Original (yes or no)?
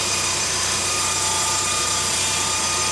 no